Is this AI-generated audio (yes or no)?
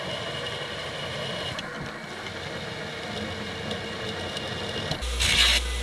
no